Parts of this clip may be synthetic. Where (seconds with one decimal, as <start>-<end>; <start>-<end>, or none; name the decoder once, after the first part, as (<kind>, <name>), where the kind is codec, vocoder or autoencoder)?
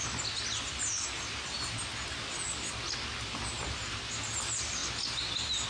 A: none